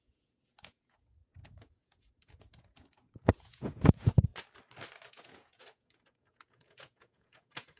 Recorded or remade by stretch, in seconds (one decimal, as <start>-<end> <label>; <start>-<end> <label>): 0.0-4.3 remade; 4.3-5.1 recorded; 5.1-7.8 remade